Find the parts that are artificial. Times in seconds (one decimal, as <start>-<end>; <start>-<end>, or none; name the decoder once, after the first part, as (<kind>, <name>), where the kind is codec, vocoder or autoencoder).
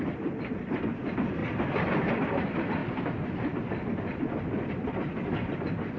0.0-1.4 (vocoder, BigVGAN v2); 2.1-2.8; 4.7-6.0